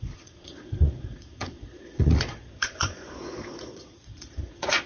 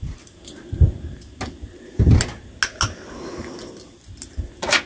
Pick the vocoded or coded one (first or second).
first